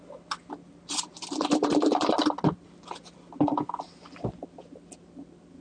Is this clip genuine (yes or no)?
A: yes